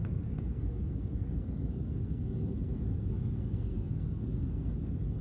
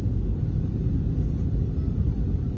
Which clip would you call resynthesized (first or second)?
first